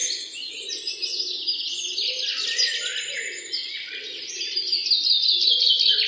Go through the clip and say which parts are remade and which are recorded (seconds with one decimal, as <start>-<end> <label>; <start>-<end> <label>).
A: 0.0-3.1 recorded; 3.1-6.1 remade